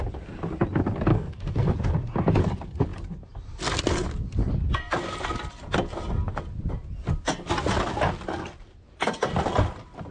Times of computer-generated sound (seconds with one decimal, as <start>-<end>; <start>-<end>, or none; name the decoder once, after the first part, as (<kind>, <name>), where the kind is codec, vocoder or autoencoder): 1.1-1.7 (codec, SNAC)